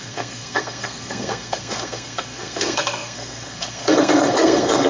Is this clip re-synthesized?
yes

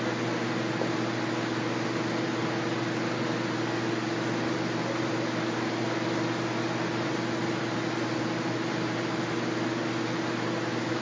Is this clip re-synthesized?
no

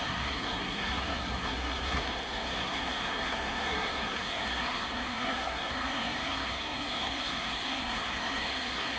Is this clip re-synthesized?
yes